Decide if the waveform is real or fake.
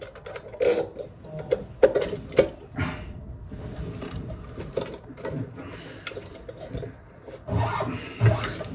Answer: real